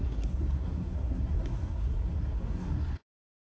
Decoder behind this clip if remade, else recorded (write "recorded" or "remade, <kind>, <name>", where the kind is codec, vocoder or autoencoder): remade, codec, SNAC